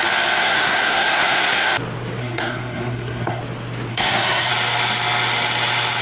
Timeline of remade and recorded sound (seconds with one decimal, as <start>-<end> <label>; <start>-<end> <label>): 0.0-0.4 recorded; 0.4-1.7 remade; 1.7-2.2 recorded; 2.2-3.4 remade; 3.4-3.9 recorded; 3.9-4.5 remade; 4.5-6.0 recorded